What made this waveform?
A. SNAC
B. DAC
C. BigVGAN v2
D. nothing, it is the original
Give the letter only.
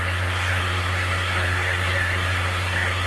A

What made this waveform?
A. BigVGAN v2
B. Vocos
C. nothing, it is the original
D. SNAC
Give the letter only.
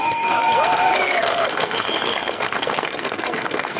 D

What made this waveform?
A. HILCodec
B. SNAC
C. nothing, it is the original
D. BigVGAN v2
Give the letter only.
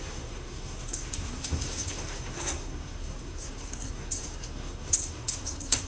B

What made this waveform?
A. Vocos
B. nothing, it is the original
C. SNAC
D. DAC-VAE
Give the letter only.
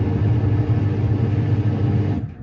B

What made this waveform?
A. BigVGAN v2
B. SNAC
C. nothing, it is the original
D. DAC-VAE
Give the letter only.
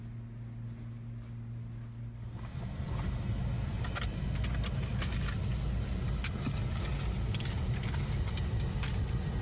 C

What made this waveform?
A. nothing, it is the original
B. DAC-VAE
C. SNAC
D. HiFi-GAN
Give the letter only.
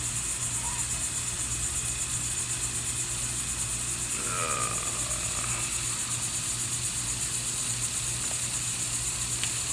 A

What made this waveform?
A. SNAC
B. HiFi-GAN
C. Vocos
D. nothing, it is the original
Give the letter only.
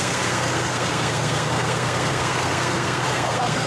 A